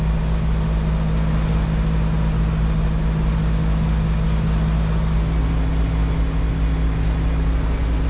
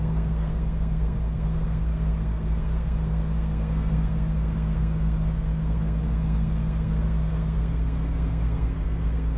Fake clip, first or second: second